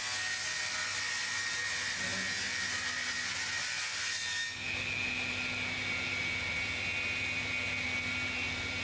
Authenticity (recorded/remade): recorded